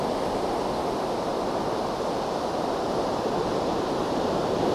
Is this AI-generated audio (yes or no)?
no